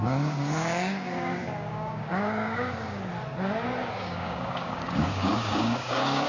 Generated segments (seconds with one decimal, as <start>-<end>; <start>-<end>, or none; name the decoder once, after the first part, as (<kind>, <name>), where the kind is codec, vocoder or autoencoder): 0.0-3.1 (codec, DAC); 3.9-6.3